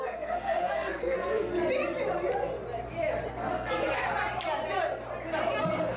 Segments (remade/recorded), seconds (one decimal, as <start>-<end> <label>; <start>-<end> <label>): 0.0-1.5 remade; 1.5-3.3 recorded; 3.3-4.0 remade; 4.0-5.6 recorded; 5.6-6.0 remade